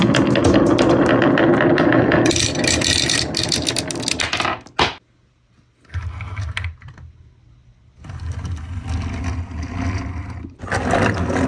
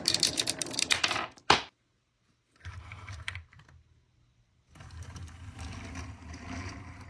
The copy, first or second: second